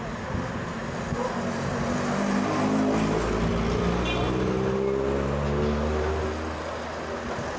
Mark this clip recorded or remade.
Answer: recorded